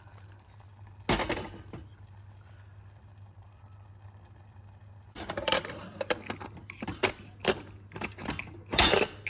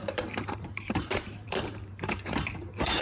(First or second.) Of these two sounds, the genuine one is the first